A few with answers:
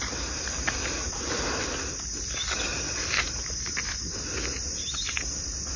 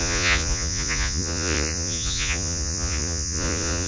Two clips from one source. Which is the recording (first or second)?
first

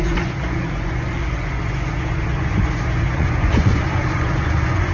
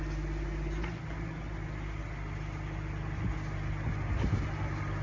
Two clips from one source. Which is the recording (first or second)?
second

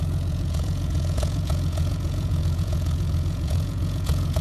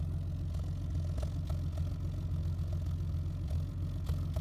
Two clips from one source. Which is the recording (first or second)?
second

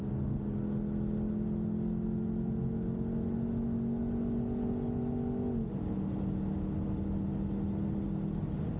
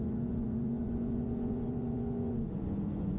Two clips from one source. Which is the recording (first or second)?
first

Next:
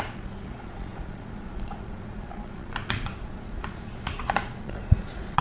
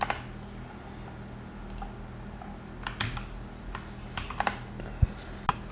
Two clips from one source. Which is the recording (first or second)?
second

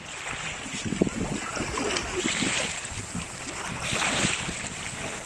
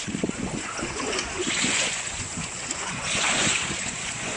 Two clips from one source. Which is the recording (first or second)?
first